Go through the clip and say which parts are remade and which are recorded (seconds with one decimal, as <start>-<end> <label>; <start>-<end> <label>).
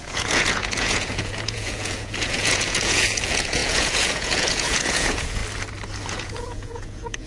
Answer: 0.0-5.4 remade; 5.4-6.1 recorded; 6.1-7.3 remade